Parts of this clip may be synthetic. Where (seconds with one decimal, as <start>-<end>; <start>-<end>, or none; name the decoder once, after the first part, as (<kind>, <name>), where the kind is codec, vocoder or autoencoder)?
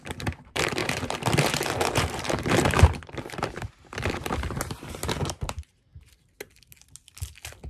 0.0-5.9 (vocoder, BigVGAN v2)